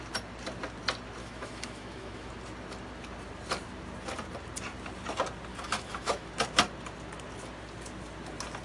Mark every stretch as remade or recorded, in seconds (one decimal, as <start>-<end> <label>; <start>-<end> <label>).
0.0-1.2 recorded; 1.2-2.3 remade; 2.3-5.5 recorded; 5.5-6.3 remade; 6.3-8.6 recorded